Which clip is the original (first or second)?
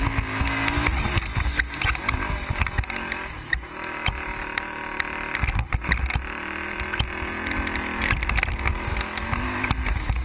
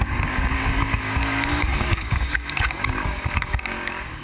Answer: first